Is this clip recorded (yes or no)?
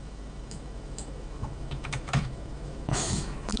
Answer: no